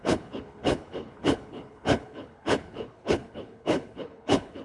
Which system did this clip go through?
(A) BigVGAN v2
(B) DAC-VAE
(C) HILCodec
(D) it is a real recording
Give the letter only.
C